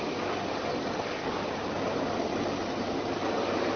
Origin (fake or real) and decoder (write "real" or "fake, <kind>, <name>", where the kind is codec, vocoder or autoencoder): real